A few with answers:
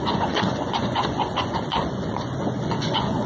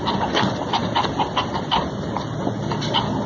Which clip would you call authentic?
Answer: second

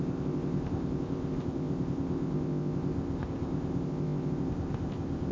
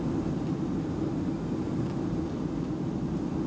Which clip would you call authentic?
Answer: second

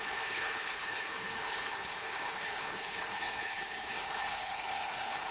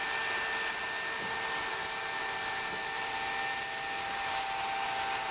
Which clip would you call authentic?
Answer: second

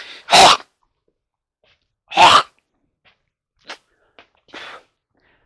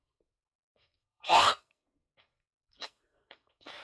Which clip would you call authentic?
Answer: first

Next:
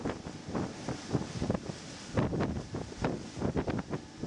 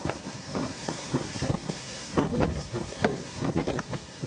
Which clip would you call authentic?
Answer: first